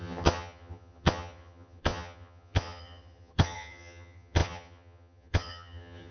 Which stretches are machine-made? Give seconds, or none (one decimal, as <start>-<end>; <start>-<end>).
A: 0.0-6.1